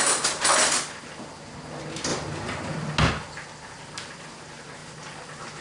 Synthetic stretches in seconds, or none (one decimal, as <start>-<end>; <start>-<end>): none

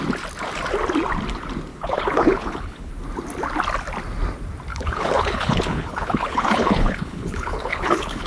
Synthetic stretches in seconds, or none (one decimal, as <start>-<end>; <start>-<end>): 1.7-2.9; 4.7-8.3

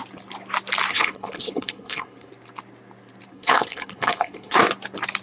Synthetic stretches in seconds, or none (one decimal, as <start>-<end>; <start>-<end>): 0.9-2.3; 3.3-4.6

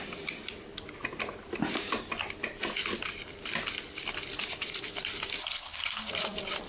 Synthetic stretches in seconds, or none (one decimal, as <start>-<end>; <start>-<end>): 5.4-6.1